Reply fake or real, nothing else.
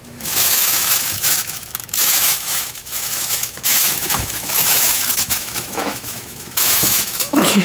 fake